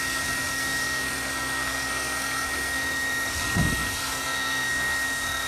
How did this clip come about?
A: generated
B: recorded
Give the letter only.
A